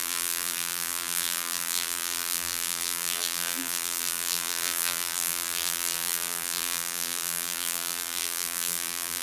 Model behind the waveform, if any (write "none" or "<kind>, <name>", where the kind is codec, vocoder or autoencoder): vocoder, BigVGAN v2